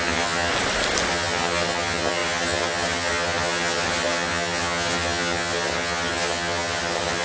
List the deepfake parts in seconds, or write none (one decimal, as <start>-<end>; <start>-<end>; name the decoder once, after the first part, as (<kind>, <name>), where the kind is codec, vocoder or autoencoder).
0.0-0.5 (vocoder, HiFi-GAN); 1.1-7.2